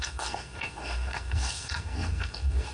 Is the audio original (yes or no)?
no